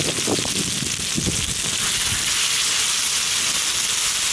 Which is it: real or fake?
real